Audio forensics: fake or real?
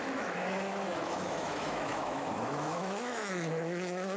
fake